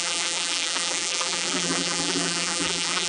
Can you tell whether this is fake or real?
fake